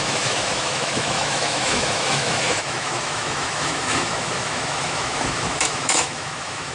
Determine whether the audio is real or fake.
fake